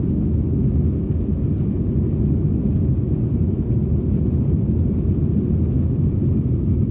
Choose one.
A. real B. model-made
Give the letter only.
A